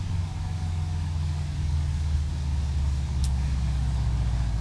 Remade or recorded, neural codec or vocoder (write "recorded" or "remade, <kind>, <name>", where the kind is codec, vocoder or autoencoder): remade, codec, DAC